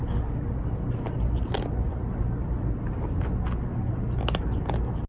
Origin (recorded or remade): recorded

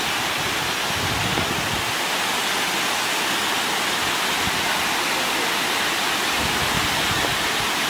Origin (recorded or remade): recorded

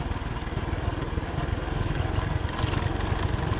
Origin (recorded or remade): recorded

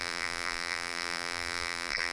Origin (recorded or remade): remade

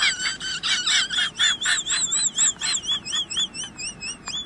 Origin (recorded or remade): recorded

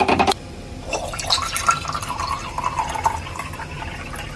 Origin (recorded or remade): recorded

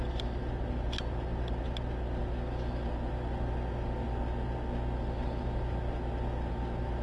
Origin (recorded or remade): recorded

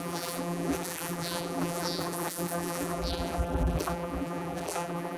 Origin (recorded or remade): remade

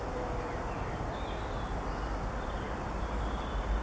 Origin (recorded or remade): recorded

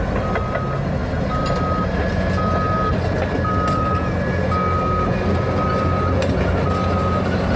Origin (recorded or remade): recorded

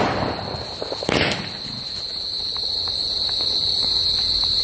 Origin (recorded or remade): recorded